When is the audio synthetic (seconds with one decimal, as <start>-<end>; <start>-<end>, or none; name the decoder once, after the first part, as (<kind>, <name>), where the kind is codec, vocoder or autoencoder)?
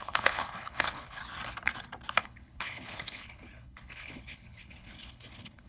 0.0-1.2 (codec, HILCodec); 2.2-5.7